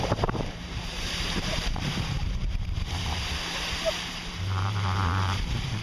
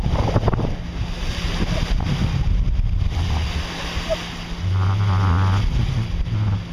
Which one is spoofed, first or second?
first